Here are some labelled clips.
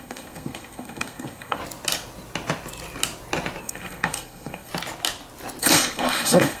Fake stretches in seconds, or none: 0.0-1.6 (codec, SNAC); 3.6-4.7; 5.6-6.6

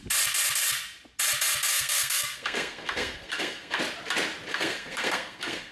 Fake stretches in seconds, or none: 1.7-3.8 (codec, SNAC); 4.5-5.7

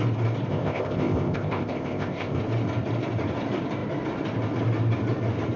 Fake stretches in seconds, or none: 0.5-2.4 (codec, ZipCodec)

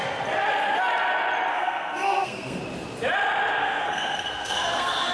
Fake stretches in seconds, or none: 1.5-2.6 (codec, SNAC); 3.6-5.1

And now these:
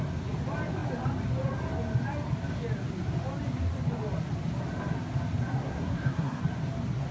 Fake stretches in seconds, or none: 5.6-6.4 (codec, SNAC)

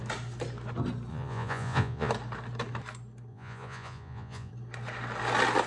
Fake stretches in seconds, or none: 1.1-2.1 (vocoder, Vocos); 3.3-4.5

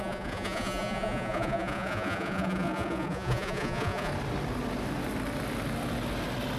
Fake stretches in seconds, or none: 0.0-4.1 (vocoder, Vocos)